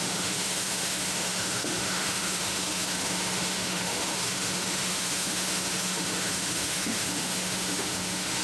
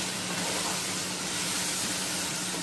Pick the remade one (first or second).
first